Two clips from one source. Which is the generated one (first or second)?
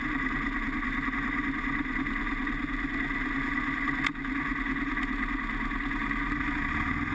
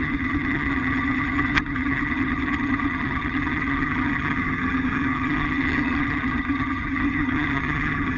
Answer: second